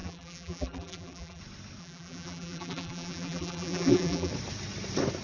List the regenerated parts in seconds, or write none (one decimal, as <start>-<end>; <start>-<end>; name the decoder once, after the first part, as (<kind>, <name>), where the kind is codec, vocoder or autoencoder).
0.0-1.4 (vocoder, BigVGAN v2); 1.8-4.3